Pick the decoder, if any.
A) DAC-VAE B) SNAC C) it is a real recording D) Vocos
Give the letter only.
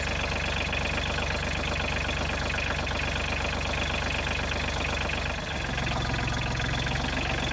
C